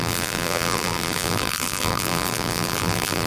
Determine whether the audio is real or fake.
fake